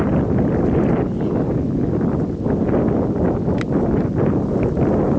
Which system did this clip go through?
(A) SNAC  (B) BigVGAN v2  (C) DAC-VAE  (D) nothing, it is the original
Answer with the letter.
D